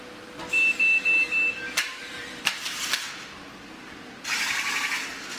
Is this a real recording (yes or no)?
yes